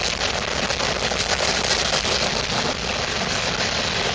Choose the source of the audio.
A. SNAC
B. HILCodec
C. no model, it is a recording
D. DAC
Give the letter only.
C